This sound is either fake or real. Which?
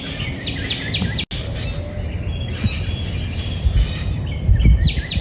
real